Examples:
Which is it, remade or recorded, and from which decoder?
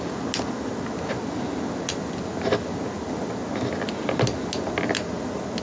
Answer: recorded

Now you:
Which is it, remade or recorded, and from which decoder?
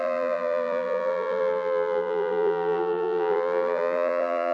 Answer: remade, vocoder, BigVGAN v2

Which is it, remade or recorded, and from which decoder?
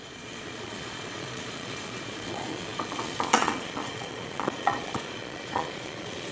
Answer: remade, vocoder, Vocos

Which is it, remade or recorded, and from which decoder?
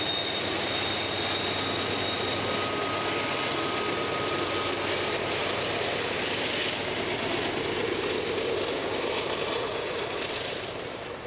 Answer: recorded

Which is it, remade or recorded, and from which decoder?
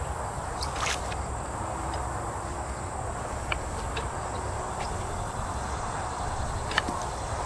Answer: recorded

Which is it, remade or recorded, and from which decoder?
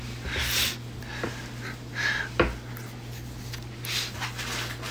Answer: recorded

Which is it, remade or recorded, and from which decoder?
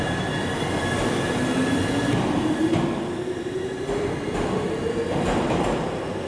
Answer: recorded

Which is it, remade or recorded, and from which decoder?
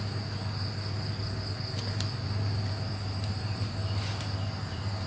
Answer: recorded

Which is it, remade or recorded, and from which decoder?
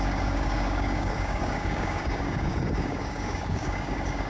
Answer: remade, codec, DAC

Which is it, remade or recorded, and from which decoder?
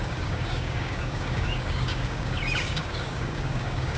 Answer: remade, codec, DAC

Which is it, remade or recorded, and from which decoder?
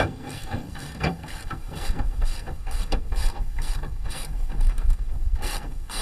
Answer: remade, codec, SNAC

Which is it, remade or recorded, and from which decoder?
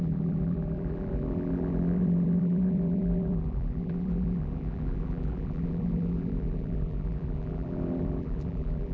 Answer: remade, vocoder, BigVGAN v2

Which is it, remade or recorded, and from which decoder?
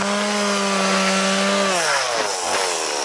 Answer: recorded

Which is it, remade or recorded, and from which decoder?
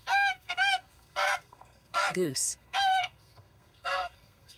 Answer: remade, codec, SNAC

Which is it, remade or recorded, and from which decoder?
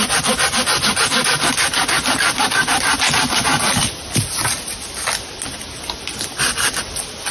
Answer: recorded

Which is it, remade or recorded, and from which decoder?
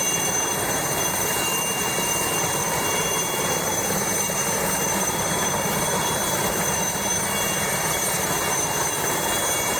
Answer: remade, vocoder, BigVGAN v2